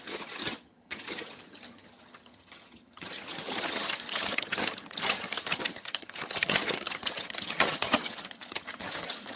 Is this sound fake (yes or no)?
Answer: yes